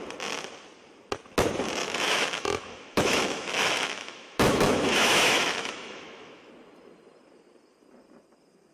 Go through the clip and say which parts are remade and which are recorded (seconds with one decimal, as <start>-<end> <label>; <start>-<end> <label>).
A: 0.0-1.8 recorded; 1.8-6.5 remade; 6.5-8.7 recorded